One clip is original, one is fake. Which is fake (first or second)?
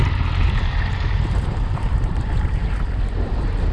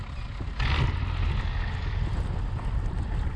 first